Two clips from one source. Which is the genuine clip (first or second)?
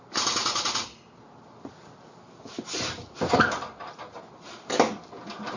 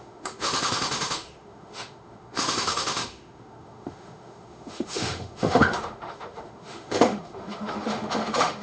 first